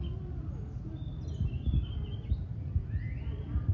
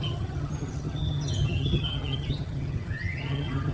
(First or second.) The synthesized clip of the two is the second